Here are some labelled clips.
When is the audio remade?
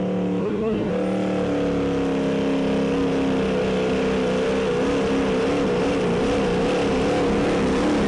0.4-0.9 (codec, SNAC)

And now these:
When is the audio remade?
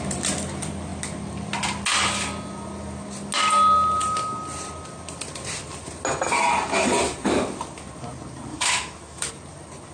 8.5-9.3 (autoencoder, DAC-VAE)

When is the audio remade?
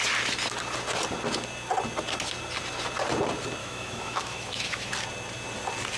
3.6-4.9 (autoencoder, DAC-VAE)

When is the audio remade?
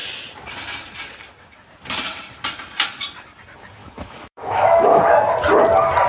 3.8-5.0 (autoencoder, DAC-VAE)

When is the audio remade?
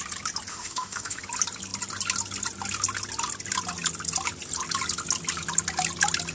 0.5-1.2 (autoencoder, DAC-VAE)